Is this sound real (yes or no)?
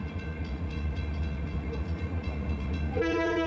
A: no